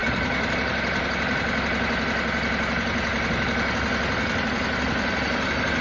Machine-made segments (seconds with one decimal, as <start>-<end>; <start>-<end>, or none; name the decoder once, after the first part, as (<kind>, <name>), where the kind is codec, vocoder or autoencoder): none